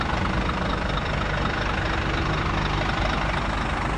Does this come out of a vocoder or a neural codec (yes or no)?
no